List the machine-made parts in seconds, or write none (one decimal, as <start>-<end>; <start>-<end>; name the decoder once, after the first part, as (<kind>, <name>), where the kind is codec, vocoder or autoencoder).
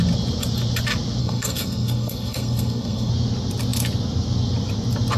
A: 1.2-3.1 (codec, SNAC)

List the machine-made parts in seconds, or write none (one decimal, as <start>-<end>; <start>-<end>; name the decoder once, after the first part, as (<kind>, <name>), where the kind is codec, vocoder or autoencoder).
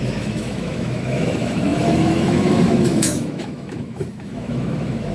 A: 0.0-5.1 (autoencoder, DAC-VAE)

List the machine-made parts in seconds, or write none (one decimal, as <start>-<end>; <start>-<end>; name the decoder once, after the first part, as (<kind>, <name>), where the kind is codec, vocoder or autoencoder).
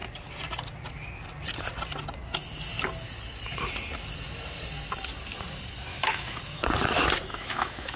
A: 5.9-6.4 (autoencoder, DAC-VAE); 7.3-8.0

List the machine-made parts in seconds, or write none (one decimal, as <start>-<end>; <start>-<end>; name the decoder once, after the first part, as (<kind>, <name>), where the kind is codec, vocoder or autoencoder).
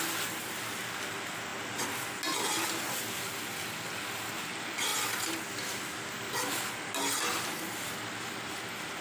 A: none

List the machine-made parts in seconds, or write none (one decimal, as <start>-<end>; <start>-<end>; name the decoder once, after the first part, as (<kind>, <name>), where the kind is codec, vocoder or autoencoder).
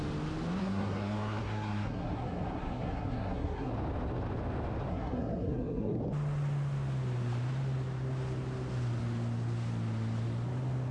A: 0.6-3.7 (codec, SNAC); 4.9-6.0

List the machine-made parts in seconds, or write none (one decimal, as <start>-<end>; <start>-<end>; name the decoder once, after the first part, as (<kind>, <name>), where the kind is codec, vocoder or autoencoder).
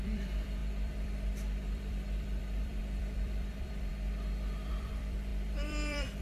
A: 0.0-3.9 (vocoder, BigVGAN v2); 4.7-6.2